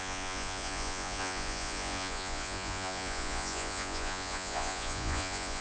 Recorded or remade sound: remade